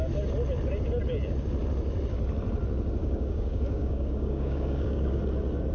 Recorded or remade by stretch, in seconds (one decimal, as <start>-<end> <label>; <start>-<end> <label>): 0.0-3.0 recorded; 3.0-5.2 remade; 5.2-5.7 recorded